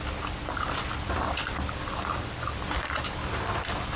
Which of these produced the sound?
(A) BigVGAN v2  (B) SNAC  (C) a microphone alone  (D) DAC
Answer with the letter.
C